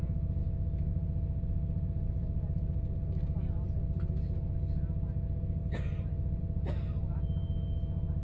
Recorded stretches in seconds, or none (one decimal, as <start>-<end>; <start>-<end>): 0.0-0.4; 0.9-8.2

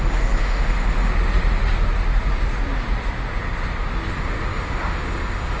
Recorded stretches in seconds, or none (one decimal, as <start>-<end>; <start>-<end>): 1.1-4.1

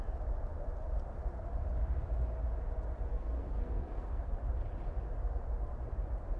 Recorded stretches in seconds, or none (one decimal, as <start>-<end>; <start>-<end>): 0.0-3.1; 4.4-6.4

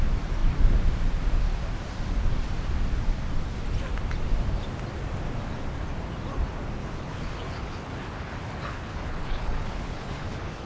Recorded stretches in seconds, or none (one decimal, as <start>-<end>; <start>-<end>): 0.0-6.8